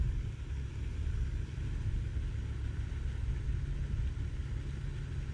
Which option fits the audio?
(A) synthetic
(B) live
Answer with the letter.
B